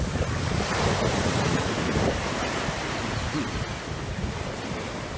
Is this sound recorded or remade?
recorded